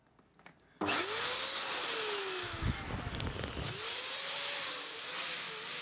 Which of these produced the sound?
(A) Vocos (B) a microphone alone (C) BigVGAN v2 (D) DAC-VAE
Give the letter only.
B